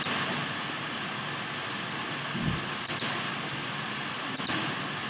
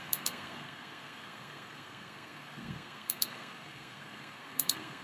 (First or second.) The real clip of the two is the first